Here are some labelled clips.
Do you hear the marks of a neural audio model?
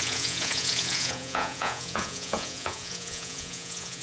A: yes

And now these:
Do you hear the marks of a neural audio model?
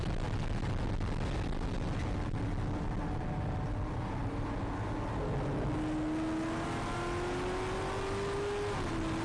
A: no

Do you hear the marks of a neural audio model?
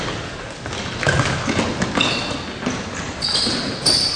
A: no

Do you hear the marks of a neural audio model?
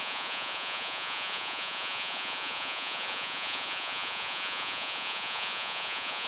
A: yes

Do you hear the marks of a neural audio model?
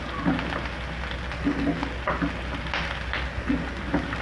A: no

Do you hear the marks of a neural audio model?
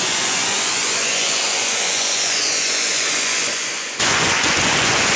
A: yes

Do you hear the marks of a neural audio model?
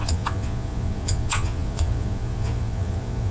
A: yes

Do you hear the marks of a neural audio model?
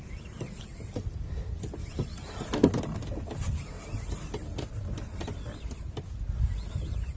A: no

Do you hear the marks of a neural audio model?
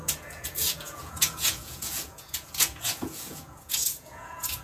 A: yes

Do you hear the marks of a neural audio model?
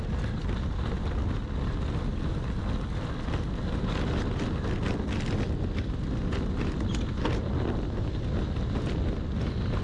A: no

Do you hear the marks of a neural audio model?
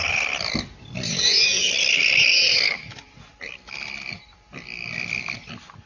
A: no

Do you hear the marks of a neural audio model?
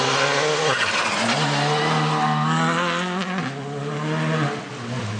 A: no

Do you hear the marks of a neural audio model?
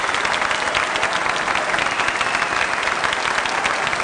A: no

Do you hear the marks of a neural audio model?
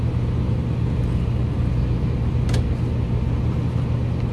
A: no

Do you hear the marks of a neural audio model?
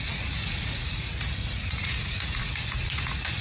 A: yes